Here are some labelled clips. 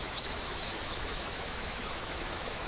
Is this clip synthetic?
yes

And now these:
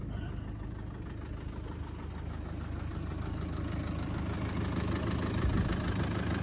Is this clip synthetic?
no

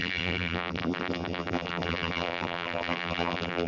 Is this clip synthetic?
yes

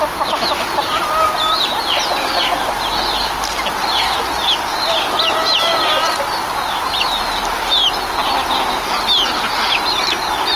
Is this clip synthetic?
no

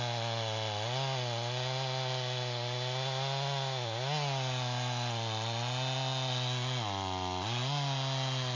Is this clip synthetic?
no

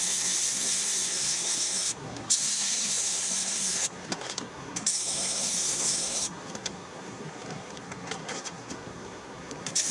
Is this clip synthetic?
yes